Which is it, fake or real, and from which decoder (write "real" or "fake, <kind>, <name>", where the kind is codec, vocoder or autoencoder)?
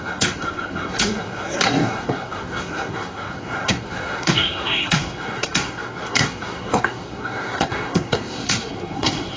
fake, codec, SNAC